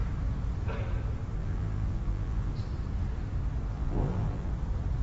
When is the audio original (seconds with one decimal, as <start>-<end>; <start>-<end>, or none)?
0.0-1.4; 2.5-3.7; 4.5-5.0